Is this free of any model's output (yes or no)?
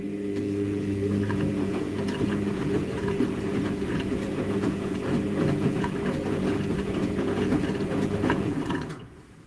no